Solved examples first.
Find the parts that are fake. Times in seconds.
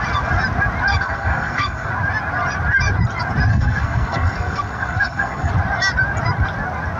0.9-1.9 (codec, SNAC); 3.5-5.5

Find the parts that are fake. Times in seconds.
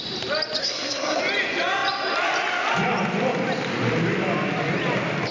0.6-1.2 (codec, SNAC)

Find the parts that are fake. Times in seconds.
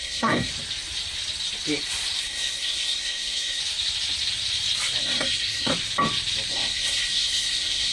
0.0-0.5 (codec, SNAC); 2.2-3.6; 5.0-5.7; 6.5-7.9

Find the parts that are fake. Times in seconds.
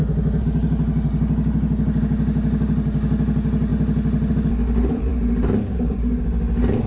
none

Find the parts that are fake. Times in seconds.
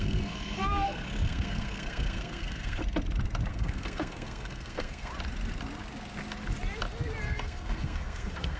0.0-2.8 (codec, SNAC); 3.5-5.1; 7.2-8.6